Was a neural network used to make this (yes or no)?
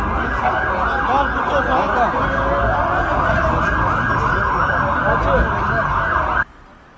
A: no